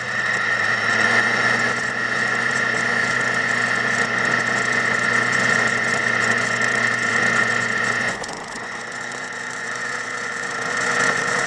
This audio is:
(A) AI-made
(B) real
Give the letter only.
A